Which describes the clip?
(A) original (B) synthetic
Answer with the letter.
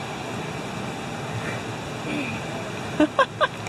A